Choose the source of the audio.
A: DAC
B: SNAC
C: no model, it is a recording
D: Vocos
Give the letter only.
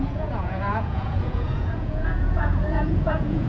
D